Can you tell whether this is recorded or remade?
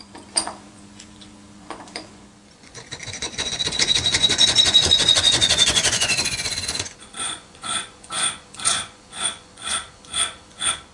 remade